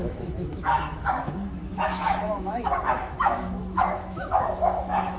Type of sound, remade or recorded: remade